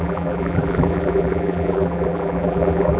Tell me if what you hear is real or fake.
fake